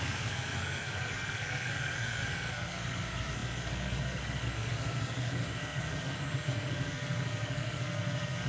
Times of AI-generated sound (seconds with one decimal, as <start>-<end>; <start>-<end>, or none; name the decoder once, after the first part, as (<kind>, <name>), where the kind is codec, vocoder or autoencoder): 0.0-8.5 (codec, SNAC)

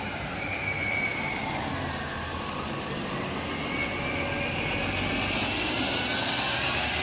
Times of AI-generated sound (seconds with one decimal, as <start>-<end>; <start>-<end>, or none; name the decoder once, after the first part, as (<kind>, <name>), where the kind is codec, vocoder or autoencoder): none

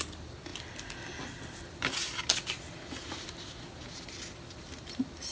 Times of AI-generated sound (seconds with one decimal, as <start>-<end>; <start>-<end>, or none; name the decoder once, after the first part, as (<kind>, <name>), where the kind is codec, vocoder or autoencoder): none

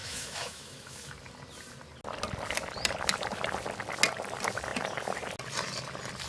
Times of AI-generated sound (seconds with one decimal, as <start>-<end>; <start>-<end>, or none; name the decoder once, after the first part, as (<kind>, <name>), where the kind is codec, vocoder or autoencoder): 0.0-1.1 (autoencoder, DAC-VAE)

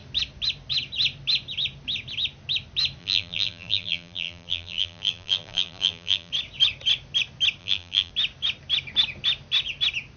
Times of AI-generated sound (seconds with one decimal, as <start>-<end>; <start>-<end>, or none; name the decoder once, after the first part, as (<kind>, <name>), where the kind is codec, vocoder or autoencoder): 3.0-6.3 (vocoder, BigVGAN v2); 7.6-8.1

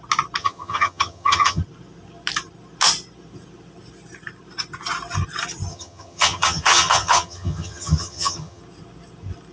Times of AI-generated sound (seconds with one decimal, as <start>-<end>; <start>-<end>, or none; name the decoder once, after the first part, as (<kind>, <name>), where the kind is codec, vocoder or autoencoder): 0.4-1.6 (vocoder, HiFi-GAN); 5.7-8.6